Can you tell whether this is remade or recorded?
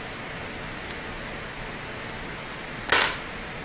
recorded